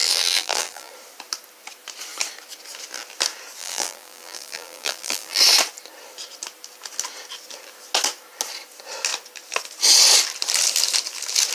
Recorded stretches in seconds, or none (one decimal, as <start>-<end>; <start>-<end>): 0.9-3.6; 5.4-11.5